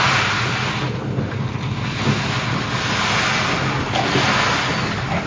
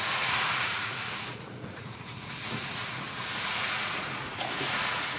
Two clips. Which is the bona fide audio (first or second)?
first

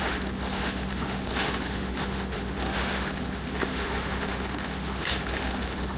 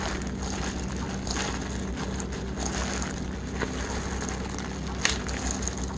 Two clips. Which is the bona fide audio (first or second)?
second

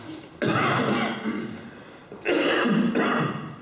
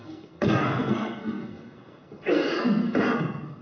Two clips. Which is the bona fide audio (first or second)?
first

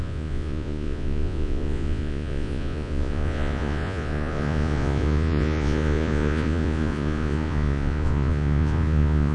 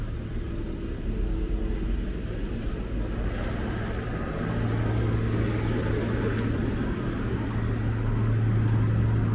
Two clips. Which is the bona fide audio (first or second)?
second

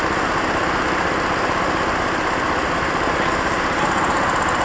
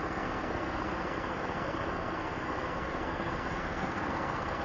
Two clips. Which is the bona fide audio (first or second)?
first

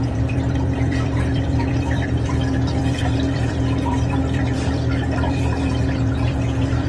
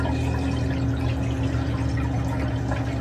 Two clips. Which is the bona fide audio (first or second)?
second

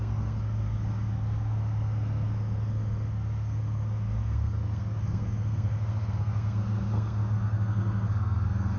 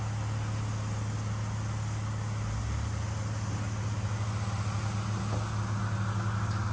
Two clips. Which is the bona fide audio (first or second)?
second